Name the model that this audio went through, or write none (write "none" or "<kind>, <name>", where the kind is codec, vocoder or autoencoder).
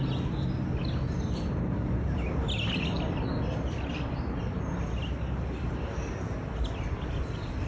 none